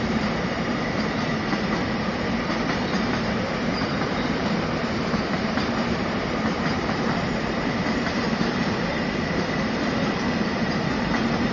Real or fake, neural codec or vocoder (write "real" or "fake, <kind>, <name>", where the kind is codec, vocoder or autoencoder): fake, vocoder, BigVGAN v2